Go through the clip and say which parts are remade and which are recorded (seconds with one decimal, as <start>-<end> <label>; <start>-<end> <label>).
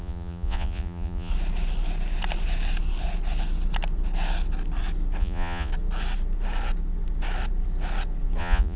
0.0-1.3 remade; 1.3-5.2 recorded; 5.2-5.7 remade; 5.7-8.4 recorded; 8.4-8.8 remade